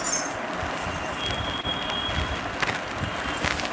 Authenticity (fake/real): real